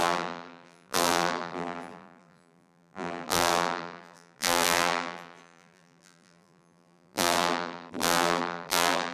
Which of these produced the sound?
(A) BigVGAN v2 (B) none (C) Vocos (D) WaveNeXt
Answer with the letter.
A